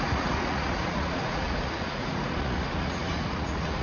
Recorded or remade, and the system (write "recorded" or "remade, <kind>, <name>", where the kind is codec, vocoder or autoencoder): remade, vocoder, Vocos